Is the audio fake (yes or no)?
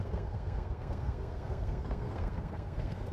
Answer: yes